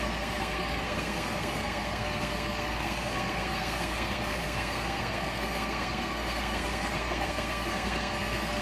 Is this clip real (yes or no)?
no